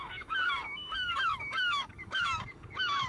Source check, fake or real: fake